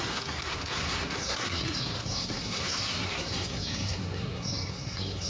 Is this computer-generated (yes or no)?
yes